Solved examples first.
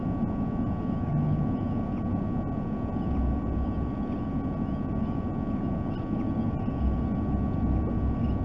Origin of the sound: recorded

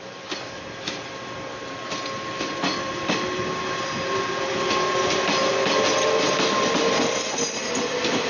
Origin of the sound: recorded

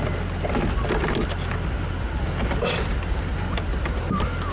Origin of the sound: recorded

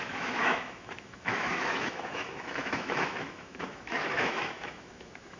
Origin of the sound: remade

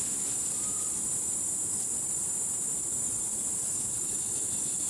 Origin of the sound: recorded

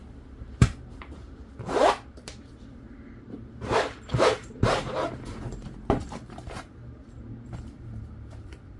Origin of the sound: remade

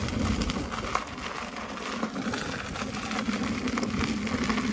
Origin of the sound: recorded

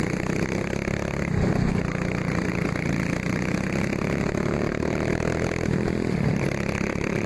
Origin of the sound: recorded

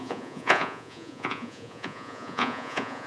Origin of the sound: remade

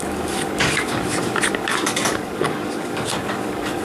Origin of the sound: remade